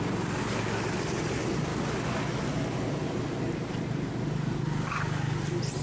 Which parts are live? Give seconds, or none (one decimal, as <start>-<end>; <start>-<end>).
0.0-5.8